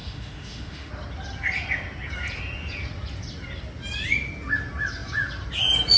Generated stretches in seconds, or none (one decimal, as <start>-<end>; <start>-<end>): 0.0-0.9